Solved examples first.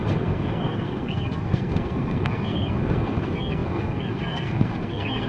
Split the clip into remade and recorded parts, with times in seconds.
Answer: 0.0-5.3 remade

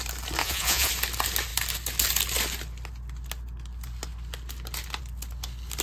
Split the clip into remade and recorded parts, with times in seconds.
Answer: 0.0-0.4 recorded; 0.4-0.9 remade; 0.9-5.8 recorded

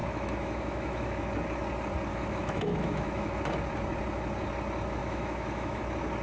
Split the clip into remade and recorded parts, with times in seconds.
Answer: 0.0-1.3 remade; 1.3-2.1 recorded; 2.1-3.4 remade; 3.4-5.0 recorded; 5.0-5.8 remade; 5.8-6.2 recorded